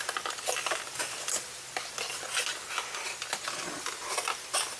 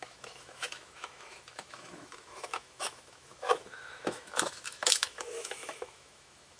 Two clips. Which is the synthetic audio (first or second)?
second